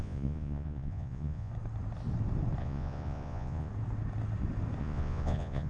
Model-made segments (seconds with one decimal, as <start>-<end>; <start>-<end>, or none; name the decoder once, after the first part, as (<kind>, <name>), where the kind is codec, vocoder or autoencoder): 0.0-1.5 (vocoder, Vocos); 2.6-3.7; 4.8-5.7